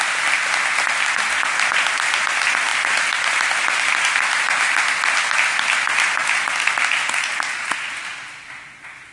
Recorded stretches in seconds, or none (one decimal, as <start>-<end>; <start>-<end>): 0.0-9.1